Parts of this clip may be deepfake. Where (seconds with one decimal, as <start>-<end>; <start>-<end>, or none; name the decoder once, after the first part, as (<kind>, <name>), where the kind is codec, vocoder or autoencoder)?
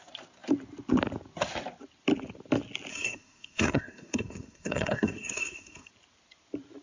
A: 2.9-5.9 (codec, SNAC)